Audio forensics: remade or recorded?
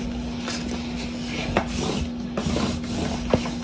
recorded